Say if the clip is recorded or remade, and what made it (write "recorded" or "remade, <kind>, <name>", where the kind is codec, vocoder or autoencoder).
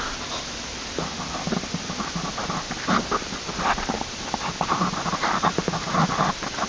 remade, vocoder, BigVGAN v2